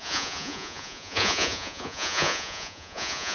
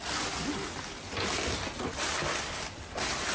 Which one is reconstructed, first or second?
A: first